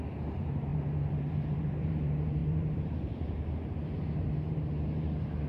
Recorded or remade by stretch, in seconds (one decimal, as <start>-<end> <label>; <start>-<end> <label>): 0.0-5.5 remade